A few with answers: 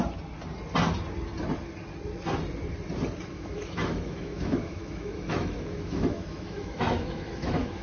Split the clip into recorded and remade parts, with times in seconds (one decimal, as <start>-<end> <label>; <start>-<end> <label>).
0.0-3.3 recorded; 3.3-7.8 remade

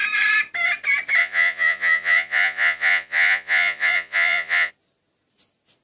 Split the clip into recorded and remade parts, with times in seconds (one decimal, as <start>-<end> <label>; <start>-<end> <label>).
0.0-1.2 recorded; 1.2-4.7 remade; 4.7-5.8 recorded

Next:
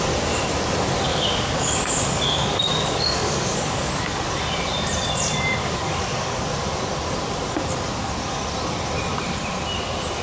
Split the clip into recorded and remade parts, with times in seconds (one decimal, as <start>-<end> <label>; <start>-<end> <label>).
0.0-1.1 recorded; 1.1-3.9 remade; 3.9-5.6 recorded; 5.6-6.5 remade; 6.5-10.2 recorded

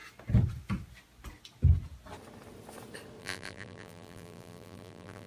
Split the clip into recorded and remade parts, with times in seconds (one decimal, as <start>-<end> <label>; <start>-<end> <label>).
0.0-3.2 recorded; 3.2-5.3 remade

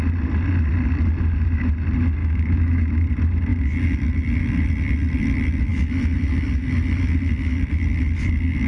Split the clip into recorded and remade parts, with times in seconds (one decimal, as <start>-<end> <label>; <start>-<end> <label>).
0.0-2.2 recorded; 2.2-2.8 remade; 2.8-8.7 recorded

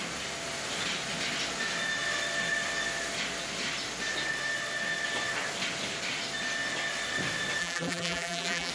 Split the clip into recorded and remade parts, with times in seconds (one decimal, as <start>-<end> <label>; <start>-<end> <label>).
0.0-7.6 recorded; 7.6-8.7 remade